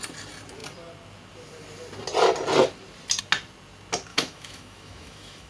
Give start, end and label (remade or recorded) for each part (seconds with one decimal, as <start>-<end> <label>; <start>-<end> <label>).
0.0-4.1 recorded; 4.1-5.5 remade